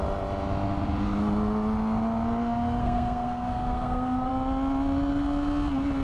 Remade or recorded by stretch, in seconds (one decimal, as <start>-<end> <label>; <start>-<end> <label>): 0.0-2.8 recorded; 2.8-4.3 remade; 4.3-6.0 recorded